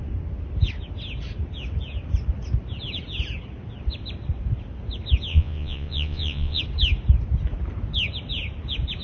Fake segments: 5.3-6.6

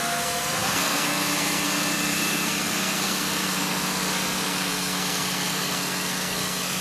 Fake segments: 0.0-6.8

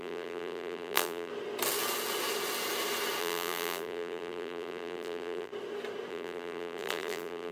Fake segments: 0.0-1.3; 3.2-5.5; 6.1-7.5

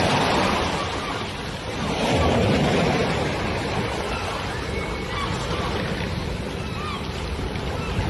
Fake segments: none

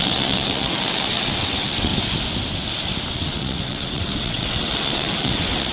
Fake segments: 0.0-1.9; 3.1-5.7

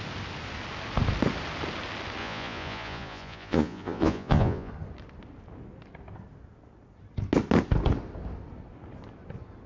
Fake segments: 2.2-4.7